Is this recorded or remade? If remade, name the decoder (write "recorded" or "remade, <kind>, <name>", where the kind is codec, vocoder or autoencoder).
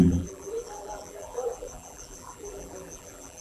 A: remade, vocoder, BigVGAN v2